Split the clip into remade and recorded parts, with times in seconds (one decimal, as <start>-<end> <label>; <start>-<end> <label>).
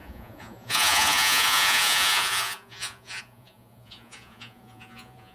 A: 0.0-5.3 remade